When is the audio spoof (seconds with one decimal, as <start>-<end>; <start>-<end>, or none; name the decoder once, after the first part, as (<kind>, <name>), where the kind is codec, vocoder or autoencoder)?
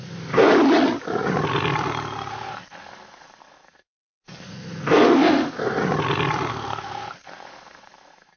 0.0-0.5 (codec, SNAC); 2.3-5.8; 6.5-8.4